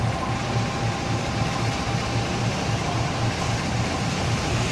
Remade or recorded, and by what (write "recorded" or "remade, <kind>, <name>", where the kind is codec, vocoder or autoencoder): recorded